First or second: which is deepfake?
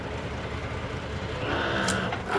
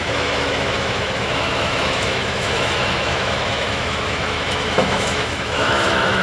second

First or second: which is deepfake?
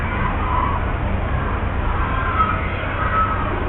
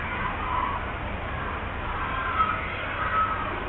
second